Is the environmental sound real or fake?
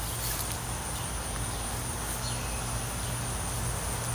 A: real